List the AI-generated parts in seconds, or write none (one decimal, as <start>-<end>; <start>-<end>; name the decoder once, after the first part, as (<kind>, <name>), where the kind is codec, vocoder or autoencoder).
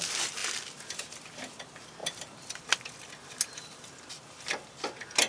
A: 0.4-1.1 (vocoder, BigVGAN v2)